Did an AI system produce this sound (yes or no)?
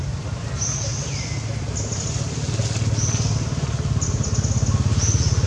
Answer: no